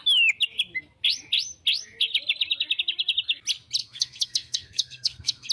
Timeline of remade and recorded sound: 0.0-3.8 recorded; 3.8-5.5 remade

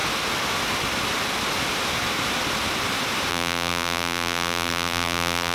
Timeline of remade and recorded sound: 0.0-3.3 recorded; 3.3-5.5 remade

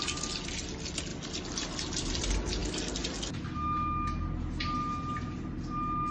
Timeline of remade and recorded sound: 0.0-6.1 recorded

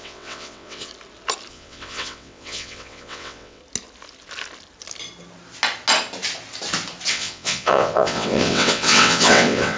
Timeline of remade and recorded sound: 0.0-0.9 remade; 0.9-1.5 recorded; 1.5-3.6 remade; 3.6-7.1 recorded; 7.1-9.8 remade